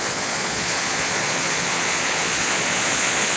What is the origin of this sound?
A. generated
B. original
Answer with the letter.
A